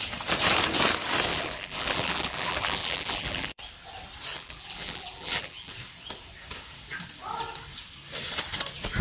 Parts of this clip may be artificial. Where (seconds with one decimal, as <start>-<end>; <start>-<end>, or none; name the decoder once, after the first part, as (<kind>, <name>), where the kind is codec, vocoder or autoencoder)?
1.3-3.6 (vocoder, BigVGAN v2); 4.3-5.7